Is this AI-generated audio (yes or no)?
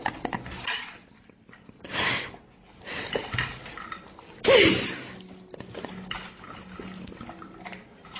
no